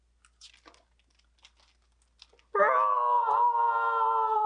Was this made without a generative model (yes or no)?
yes